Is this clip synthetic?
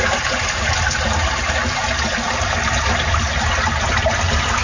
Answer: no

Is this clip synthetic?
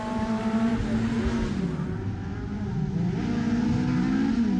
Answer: no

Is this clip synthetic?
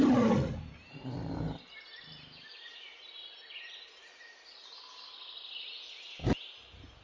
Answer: no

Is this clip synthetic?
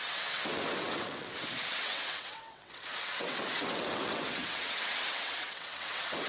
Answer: yes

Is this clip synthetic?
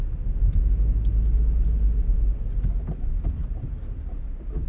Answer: no